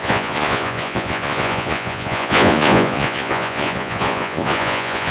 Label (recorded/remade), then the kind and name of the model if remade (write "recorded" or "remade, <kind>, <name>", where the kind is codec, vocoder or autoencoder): remade, vocoder, Vocos